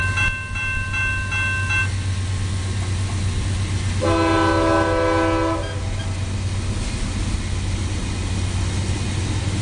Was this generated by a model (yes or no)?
no